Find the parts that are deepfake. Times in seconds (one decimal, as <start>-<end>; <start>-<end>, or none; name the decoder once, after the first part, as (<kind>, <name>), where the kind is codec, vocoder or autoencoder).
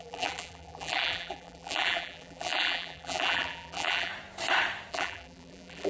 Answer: 0.0-4.1 (vocoder, BigVGAN v2); 4.9-5.9